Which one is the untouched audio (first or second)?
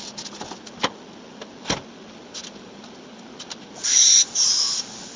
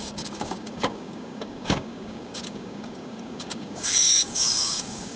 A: first